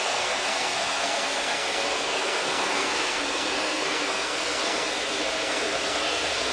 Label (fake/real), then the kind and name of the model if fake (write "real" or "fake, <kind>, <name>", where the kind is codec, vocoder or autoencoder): fake, codec, SNAC